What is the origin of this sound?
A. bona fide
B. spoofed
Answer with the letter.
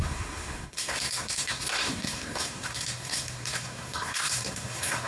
B